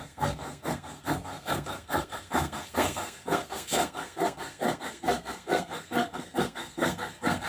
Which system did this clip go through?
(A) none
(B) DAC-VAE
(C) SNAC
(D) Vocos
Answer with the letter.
C